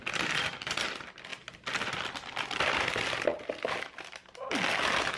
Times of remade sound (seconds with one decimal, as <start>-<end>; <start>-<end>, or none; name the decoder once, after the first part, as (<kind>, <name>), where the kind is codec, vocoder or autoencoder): 0.0-0.5 (vocoder, BigVGAN v2); 1.3-2.9